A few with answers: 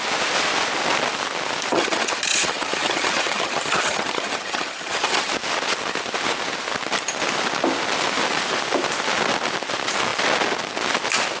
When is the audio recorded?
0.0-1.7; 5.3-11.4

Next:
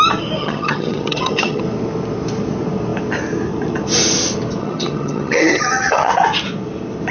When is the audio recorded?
0.0-0.4; 1.6-4.6; 6.1-7.1